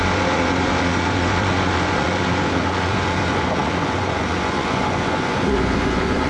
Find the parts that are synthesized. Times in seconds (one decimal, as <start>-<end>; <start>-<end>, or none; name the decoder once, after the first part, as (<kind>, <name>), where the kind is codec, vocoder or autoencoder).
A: 0.0-6.3 (vocoder, Vocos)